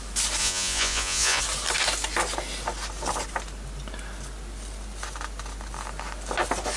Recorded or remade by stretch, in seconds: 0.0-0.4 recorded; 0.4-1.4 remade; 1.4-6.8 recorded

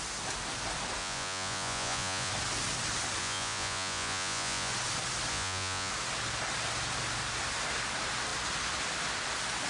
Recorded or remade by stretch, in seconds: 0.0-1.0 recorded; 1.0-2.3 remade; 2.3-3.2 recorded; 3.2-4.7 remade; 4.7-5.3 recorded; 5.3-5.9 remade; 5.9-9.7 recorded

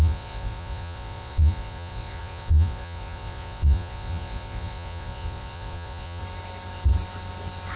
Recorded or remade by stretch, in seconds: 0.0-6.2 remade; 6.2-7.8 recorded

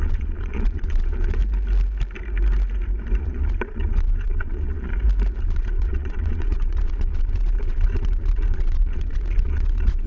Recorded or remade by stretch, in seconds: 0.0-1.4 remade; 1.4-3.2 recorded; 3.2-4.9 remade; 4.9-5.4 recorded; 5.4-10.1 remade

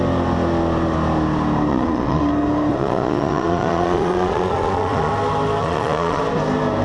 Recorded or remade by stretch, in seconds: 0.0-1.7 recorded; 1.7-2.2 remade; 2.2-2.7 recorded; 2.7-5.1 remade; 5.1-5.6 recorded; 5.6-6.2 remade; 6.2-6.8 recorded

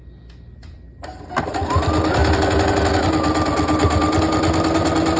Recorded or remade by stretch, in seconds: 0.0-5.2 recorded